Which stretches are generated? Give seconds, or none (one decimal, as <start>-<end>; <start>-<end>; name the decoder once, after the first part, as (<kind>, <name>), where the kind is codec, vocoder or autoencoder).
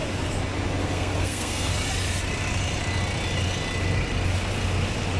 0.8-1.7 (codec, SNAC)